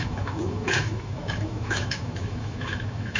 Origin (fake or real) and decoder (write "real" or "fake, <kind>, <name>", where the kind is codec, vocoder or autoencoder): fake, autoencoder, DAC-VAE